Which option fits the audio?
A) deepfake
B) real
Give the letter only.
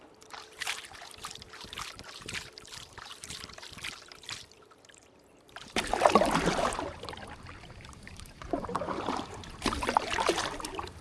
A